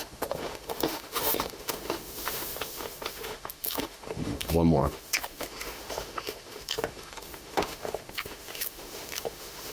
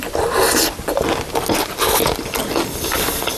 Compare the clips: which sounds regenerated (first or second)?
first